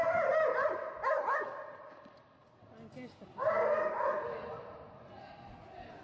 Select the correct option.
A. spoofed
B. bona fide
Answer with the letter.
B